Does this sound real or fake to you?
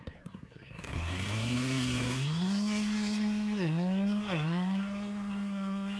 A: fake